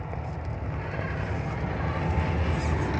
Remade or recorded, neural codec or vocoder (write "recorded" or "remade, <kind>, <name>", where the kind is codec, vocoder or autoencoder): recorded